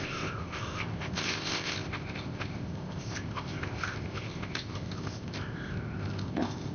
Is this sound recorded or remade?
remade